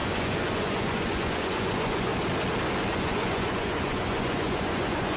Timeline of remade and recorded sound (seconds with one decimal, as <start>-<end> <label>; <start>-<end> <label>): 0.0-2.1 remade; 2.1-2.9 recorded; 2.9-5.2 remade